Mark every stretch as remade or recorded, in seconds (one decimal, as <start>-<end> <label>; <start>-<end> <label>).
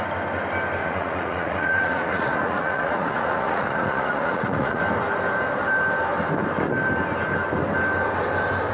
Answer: 0.0-0.8 recorded; 0.8-4.8 remade; 4.8-8.7 recorded